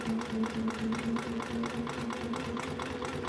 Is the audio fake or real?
real